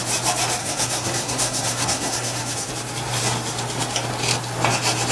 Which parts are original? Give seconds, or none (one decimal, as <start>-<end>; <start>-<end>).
0.0-0.6; 2.7-5.1